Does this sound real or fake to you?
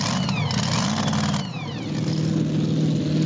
real